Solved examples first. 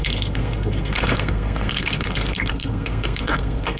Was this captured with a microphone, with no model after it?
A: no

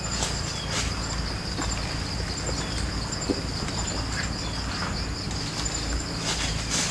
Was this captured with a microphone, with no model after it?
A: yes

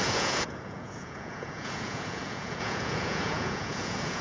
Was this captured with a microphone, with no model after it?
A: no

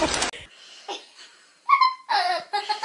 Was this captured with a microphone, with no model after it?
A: yes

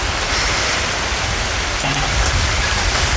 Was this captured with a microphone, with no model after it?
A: yes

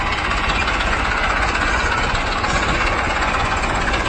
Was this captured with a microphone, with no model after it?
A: no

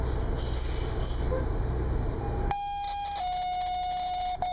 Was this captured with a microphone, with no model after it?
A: yes